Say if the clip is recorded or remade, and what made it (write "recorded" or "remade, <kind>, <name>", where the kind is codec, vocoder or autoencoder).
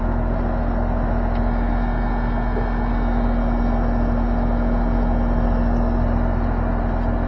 recorded